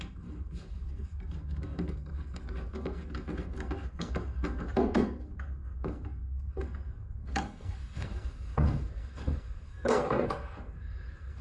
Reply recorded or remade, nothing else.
remade